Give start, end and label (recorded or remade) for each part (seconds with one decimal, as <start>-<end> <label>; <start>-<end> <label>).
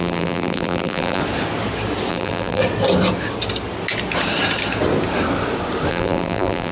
0.0-1.2 remade; 1.2-2.1 recorded; 2.1-2.6 remade; 2.6-5.9 recorded; 5.9-6.7 remade